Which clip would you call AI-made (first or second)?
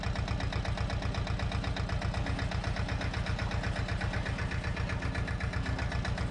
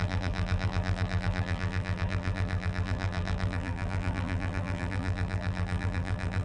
second